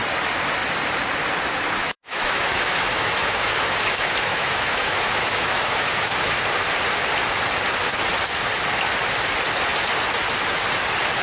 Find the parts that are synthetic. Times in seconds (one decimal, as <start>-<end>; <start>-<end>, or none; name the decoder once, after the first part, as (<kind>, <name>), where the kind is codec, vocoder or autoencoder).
1.8-6.4 (autoencoder, DAC-VAE)